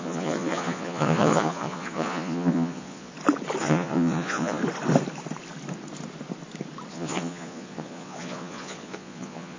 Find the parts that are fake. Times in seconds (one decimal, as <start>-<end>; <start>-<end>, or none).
0.0-3.1; 3.6-4.6; 6.9-9.6